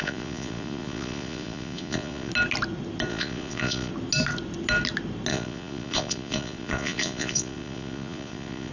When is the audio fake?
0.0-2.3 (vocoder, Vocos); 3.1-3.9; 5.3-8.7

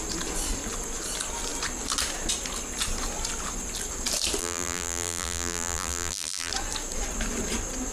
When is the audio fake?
4.4-6.5 (vocoder, BigVGAN v2)

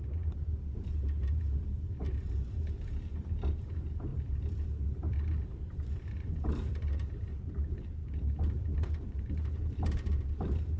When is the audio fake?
0.0-10.8 (vocoder, BigVGAN v2)

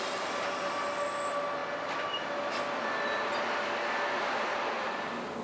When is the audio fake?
none

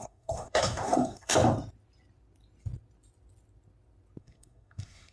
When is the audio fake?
0.0-1.3 (codec, SNAC); 4.2-5.1

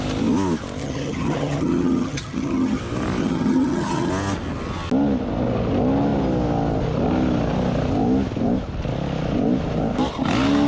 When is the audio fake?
0.8-2.8 (vocoder, HiFi-GAN); 3.2-4.1